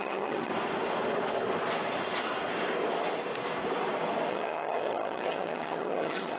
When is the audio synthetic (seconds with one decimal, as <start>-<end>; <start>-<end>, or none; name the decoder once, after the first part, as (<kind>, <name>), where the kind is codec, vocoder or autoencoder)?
0.0-0.5 (vocoder, HiFi-GAN); 4.3-6.4